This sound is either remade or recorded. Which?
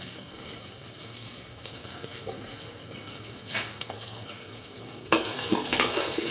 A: remade